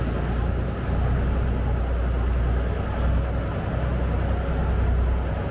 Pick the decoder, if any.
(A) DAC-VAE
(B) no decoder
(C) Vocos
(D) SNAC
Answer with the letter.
B